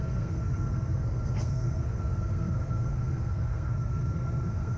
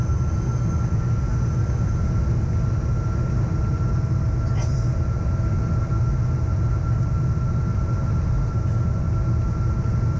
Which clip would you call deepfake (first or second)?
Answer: first